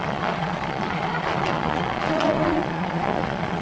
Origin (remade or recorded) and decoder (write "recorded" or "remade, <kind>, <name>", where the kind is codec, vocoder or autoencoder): remade, vocoder, Vocos